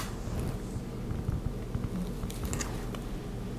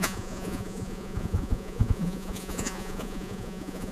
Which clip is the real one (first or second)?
first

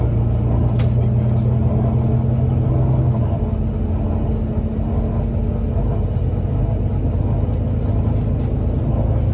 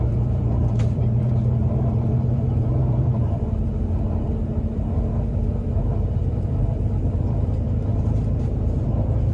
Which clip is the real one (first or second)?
first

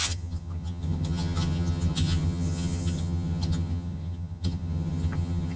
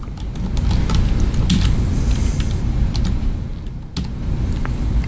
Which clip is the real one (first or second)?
second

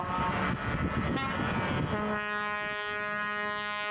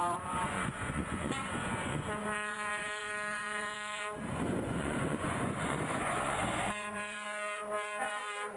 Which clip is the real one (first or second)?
first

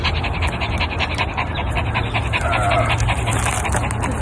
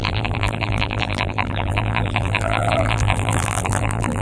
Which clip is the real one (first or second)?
first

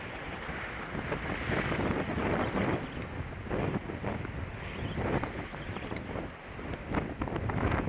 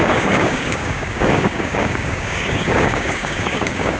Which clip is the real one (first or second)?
first